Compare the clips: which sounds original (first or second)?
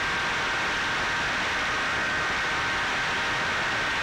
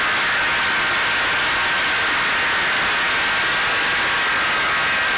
second